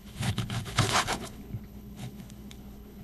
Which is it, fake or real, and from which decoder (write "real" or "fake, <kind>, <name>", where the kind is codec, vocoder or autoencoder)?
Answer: fake, codec, HILCodec